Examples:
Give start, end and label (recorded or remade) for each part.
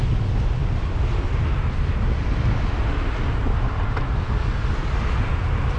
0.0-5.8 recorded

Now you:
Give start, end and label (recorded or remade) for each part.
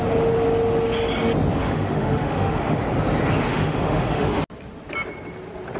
0.0-1.6 recorded; 1.6-2.8 remade; 2.8-3.5 recorded; 3.5-4.4 remade; 4.4-5.8 recorded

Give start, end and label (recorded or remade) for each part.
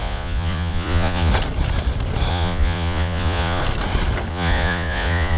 0.0-1.3 remade; 1.3-2.3 recorded; 2.3-3.6 remade; 3.6-4.3 recorded; 4.3-5.4 remade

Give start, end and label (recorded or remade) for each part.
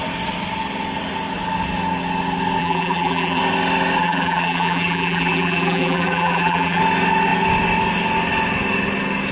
0.0-2.6 recorded; 2.6-3.4 remade; 3.4-4.0 recorded; 4.0-6.8 remade; 6.8-9.3 recorded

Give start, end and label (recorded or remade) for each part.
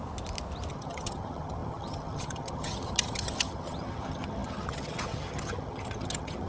0.0-0.7 recorded; 0.7-6.5 remade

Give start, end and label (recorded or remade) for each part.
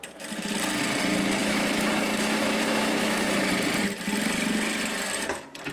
0.0-1.4 recorded; 1.4-3.5 remade; 3.5-5.7 recorded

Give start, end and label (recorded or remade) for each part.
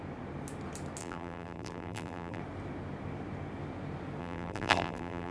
0.0-1.0 recorded; 1.0-2.4 remade; 2.4-4.2 recorded; 4.2-5.3 remade